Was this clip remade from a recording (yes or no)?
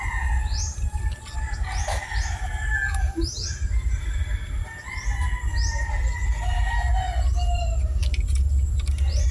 no